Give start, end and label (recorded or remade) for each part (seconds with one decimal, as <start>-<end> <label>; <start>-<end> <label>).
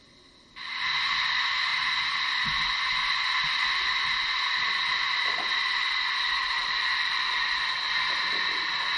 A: 0.0-0.8 remade; 0.8-6.6 recorded; 6.6-7.5 remade; 7.5-9.0 recorded